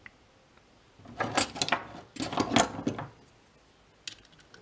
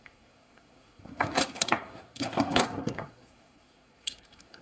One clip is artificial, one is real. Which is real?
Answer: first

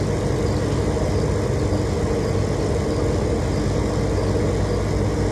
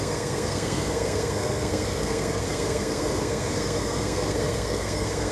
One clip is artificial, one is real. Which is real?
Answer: first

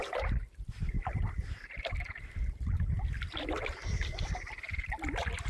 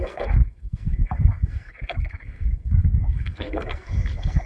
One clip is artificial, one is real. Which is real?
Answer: first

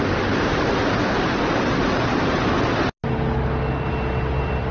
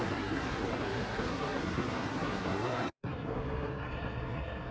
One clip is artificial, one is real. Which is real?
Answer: first